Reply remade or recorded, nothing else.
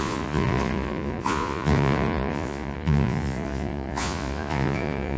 remade